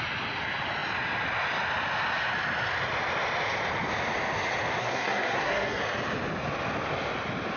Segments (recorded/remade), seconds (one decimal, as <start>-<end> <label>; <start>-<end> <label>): 0.0-4.8 recorded; 4.8-5.8 remade; 5.8-7.6 recorded